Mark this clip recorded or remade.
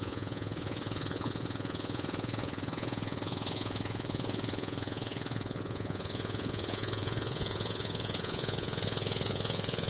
remade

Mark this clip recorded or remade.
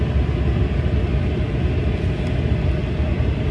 recorded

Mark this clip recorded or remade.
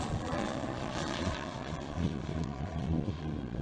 remade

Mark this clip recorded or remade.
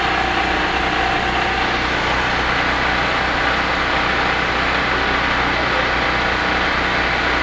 recorded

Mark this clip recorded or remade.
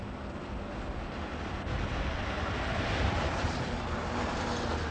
recorded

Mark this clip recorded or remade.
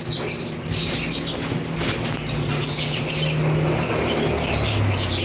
recorded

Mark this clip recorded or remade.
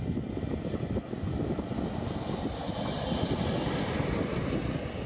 recorded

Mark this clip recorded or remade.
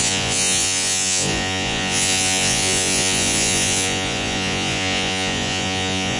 remade